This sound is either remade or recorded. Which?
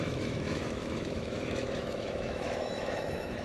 remade